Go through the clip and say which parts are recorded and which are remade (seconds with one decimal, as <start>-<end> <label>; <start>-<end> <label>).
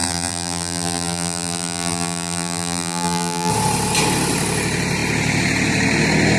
0.0-3.5 remade; 3.5-6.4 recorded